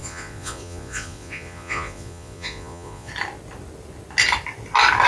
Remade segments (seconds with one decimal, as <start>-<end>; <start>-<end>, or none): 0.0-3.1